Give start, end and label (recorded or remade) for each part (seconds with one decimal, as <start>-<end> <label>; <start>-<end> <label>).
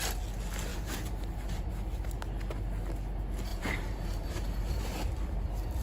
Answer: 0.0-0.7 recorded; 0.7-1.7 remade; 1.7-3.5 recorded; 3.5-4.4 remade; 4.4-5.8 recorded